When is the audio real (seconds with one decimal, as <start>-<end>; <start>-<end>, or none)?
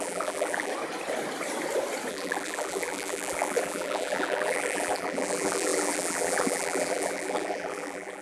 0.7-2.1